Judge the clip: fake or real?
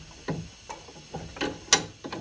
real